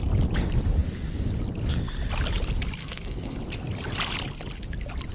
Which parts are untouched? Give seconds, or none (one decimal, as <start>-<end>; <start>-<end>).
0.0-2.8; 3.4-5.1